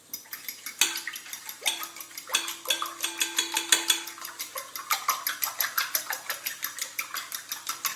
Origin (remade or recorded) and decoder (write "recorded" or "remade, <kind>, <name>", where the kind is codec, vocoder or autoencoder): recorded